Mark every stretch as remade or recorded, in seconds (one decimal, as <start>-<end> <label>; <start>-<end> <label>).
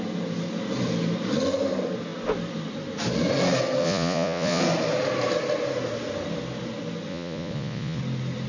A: 0.0-3.8 recorded; 3.8-4.6 remade; 4.6-7.1 recorded; 7.1-8.0 remade; 8.0-8.5 recorded